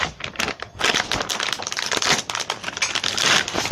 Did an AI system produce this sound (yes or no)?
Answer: no